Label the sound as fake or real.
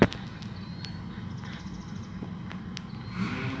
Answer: real